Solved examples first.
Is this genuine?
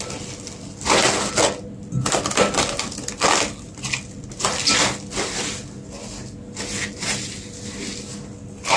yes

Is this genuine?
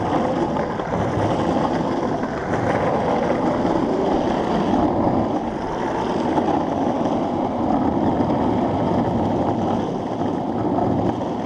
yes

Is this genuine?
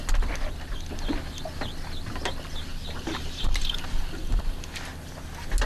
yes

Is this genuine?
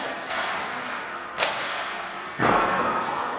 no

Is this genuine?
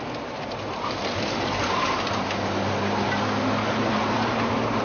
yes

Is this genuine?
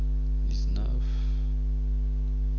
yes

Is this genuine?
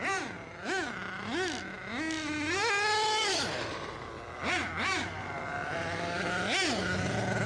yes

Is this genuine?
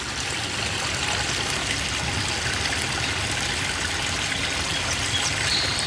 yes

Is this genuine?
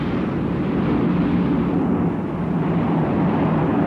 yes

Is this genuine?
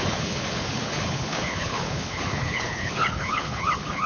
no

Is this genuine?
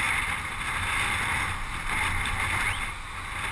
yes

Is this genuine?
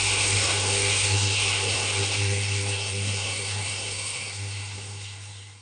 no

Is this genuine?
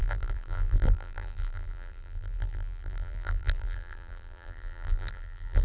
no